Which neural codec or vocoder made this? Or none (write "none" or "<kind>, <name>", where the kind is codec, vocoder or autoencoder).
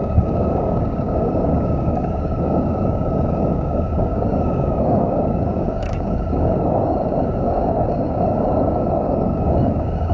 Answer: codec, DAC